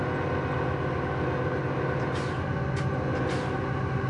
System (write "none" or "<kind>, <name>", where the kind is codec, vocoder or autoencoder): none